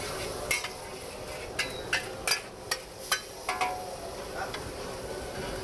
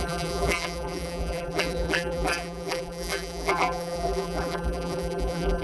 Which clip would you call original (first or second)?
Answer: first